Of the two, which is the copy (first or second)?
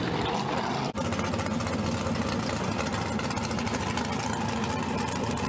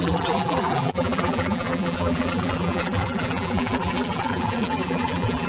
second